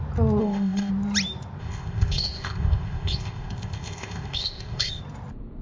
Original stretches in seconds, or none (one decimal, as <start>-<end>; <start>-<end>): 0.0-0.4; 0.9-1.6; 5.0-5.6